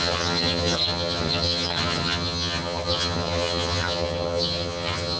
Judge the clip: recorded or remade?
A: remade